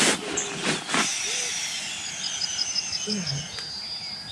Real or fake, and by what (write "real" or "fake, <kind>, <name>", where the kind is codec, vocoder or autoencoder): real